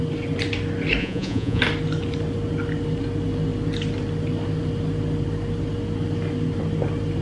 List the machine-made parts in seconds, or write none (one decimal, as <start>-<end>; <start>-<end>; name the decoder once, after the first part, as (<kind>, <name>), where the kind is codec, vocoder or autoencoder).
1.0-1.6 (vocoder, Vocos)